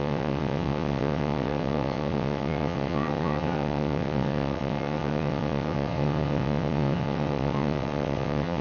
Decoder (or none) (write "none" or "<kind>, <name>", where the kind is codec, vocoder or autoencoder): vocoder, WaveNeXt